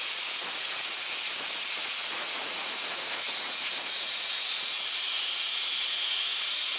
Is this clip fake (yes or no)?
yes